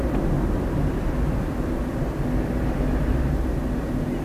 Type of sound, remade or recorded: recorded